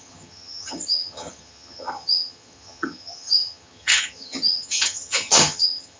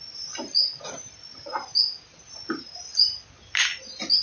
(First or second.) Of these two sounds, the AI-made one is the first